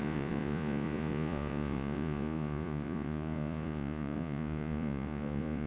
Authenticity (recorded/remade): remade